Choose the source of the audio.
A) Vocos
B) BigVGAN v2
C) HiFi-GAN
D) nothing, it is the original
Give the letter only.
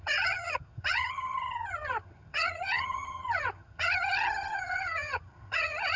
C